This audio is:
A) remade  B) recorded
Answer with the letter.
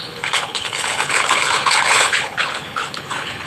A